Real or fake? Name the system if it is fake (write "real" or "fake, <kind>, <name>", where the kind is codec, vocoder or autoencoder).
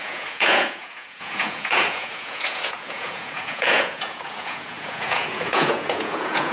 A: fake, vocoder, Vocos